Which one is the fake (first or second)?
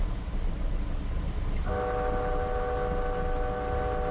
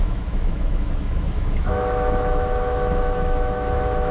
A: second